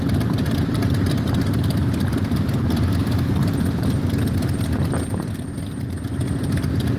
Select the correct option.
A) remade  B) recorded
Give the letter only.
B